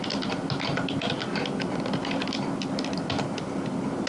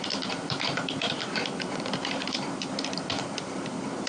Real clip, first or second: first